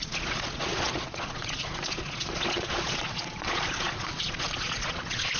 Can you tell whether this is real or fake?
fake